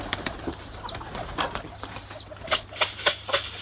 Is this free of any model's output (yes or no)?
yes